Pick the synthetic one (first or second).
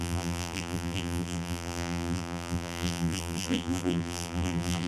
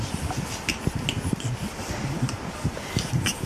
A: first